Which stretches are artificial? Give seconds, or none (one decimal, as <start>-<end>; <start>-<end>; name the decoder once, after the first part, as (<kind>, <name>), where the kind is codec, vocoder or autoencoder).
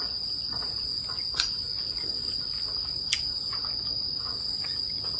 0.9-3.0 (vocoder, BigVGAN v2)